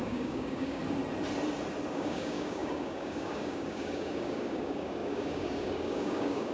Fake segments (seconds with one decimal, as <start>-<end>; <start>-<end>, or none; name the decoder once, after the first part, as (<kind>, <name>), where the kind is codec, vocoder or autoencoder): 0.0-0.8 (codec, DAC); 1.9-6.5